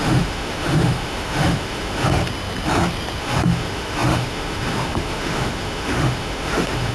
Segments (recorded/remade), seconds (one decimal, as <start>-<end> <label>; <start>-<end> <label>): 0.0-2.2 remade; 2.2-3.2 recorded; 3.2-6.9 remade